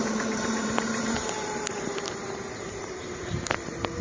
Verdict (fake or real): fake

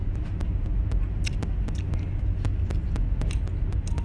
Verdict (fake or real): real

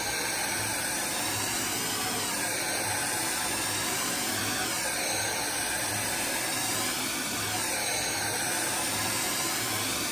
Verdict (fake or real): real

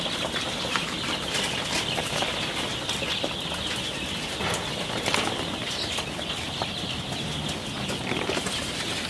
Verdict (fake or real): real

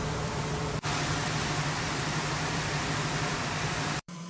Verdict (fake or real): fake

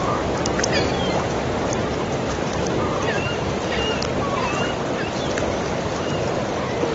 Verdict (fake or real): real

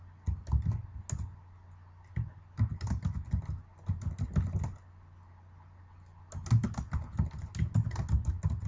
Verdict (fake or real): real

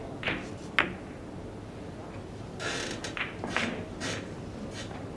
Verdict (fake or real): real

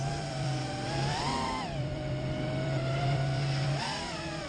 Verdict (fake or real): fake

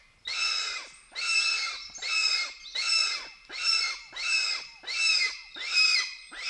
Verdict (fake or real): real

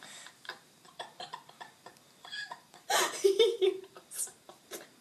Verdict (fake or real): fake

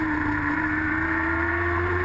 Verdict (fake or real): fake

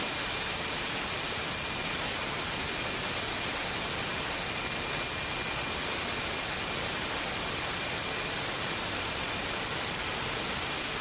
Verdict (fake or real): real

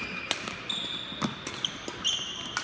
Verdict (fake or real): real